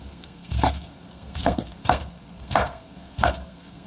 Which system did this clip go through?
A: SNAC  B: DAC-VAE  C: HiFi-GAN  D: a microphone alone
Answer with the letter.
A